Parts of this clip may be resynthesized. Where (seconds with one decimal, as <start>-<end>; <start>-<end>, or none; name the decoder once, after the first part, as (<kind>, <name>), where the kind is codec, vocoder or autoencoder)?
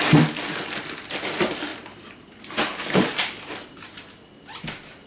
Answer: 1.7-3.9 (vocoder, BigVGAN v2)